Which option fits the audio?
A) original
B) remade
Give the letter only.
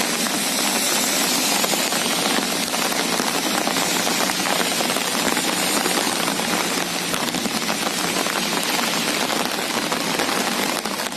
A